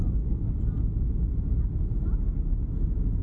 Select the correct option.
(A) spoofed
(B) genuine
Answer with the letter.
B